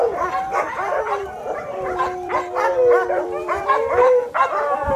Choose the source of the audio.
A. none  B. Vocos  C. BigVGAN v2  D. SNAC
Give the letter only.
C